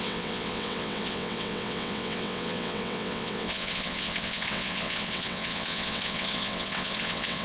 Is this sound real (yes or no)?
no